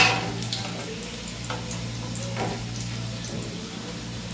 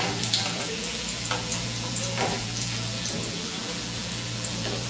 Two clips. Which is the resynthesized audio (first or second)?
second